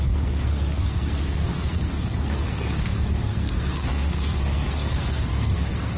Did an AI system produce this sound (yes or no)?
yes